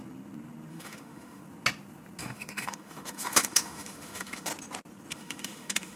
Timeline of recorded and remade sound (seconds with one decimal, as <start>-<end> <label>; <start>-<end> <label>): 0.0-0.7 recorded; 0.7-1.4 remade; 1.4-2.2 recorded; 2.2-4.5 remade; 4.5-5.1 recorded; 5.1-6.0 remade